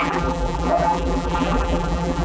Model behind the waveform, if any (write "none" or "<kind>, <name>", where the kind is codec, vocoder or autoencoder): vocoder, BigVGAN v2